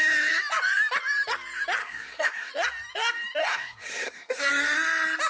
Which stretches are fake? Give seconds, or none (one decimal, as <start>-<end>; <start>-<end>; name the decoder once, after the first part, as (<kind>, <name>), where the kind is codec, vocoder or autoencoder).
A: 1.8-2.5 (codec, SNAC); 3.4-4.5